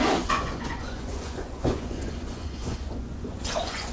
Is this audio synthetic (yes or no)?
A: yes